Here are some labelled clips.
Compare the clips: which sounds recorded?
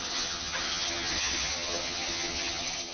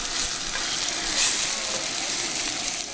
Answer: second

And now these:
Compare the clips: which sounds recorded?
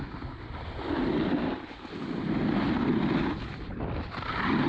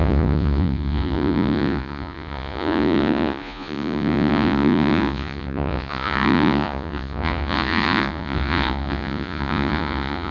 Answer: first